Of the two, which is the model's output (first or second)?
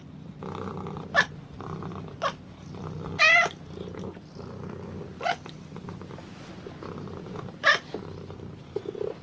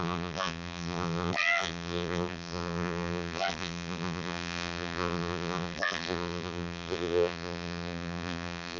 second